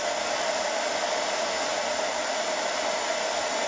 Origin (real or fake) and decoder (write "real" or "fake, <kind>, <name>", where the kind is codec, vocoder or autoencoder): real